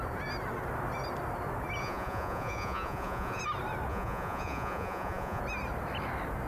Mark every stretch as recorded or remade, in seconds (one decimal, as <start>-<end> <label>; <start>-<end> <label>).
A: 0.0-1.8 recorded; 1.8-3.4 remade; 3.4-3.9 recorded; 3.9-5.4 remade; 5.4-6.5 recorded